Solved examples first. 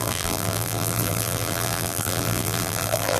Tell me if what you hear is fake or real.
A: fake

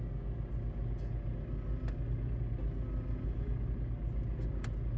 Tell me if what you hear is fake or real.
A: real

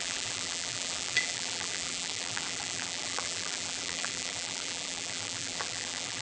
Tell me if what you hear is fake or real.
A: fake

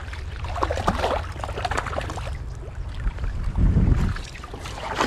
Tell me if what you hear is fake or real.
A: fake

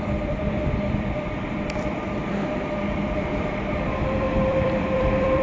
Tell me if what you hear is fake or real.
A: fake